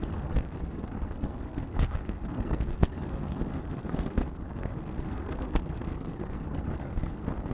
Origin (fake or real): fake